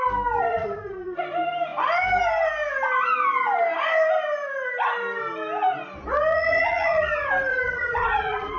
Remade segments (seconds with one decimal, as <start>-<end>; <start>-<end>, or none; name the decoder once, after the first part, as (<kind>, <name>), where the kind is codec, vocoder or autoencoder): 0.5-1.2 (vocoder, Vocos); 6.3-7.1; 7.5-8.6